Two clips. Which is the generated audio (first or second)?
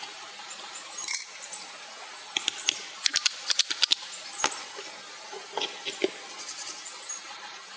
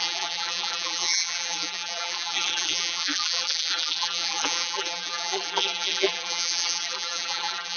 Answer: second